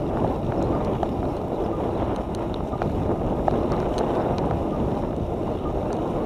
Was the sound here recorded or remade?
recorded